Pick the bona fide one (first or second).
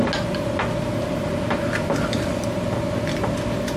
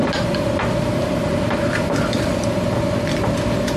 first